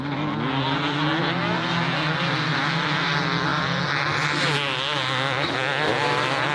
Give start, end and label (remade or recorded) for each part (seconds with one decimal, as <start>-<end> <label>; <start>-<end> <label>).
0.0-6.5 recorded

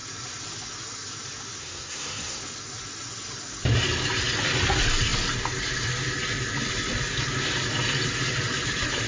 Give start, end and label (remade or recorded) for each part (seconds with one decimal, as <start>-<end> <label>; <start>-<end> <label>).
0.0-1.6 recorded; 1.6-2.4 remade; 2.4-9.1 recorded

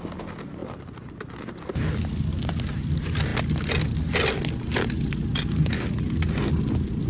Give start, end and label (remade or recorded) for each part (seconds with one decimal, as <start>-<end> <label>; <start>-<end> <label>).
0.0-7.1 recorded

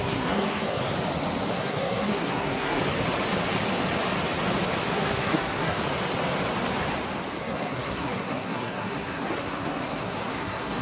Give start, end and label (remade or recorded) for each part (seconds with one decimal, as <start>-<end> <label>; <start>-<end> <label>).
0.0-0.9 remade; 0.9-1.5 recorded; 1.5-2.8 remade; 2.8-4.8 recorded; 4.8-5.8 remade; 5.8-7.4 recorded; 7.4-10.8 remade

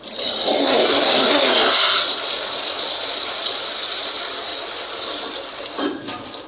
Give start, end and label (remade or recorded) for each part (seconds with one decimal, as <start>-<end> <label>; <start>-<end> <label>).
0.0-0.6 recorded; 0.6-2.0 remade; 2.0-6.5 recorded

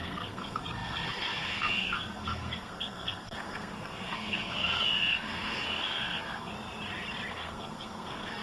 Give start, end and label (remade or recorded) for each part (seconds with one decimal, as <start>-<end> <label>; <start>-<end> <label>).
0.0-6.5 remade; 6.5-7.3 recorded; 7.3-8.4 remade

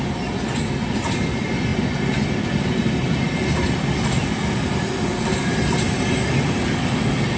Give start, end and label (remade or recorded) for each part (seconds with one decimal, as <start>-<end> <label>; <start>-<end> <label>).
0.0-7.4 recorded

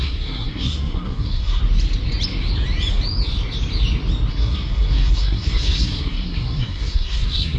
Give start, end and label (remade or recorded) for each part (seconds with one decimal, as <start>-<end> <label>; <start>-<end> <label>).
0.0-1.6 remade; 1.6-4.3 recorded; 4.3-7.6 remade